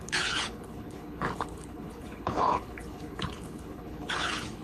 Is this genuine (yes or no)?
no